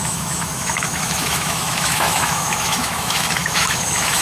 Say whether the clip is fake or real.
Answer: fake